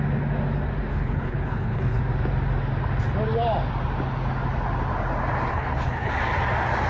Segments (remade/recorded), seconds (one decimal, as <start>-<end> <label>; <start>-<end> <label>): 0.0-0.9 recorded; 0.9-2.0 remade; 2.0-5.5 recorded; 5.5-6.1 remade; 6.1-6.9 recorded